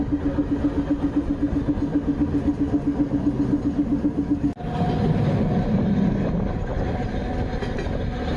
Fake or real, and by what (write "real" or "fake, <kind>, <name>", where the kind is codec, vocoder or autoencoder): real